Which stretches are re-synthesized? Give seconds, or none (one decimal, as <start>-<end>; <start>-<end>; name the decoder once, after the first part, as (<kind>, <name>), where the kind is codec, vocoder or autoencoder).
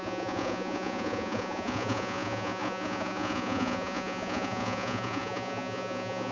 0.0-6.3 (vocoder, Vocos)